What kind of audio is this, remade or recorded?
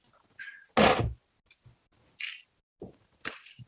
recorded